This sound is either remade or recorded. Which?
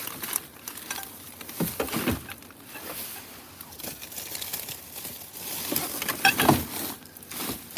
recorded